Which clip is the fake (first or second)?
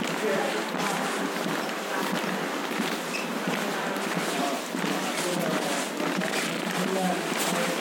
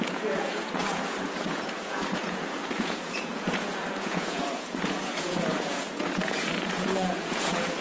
second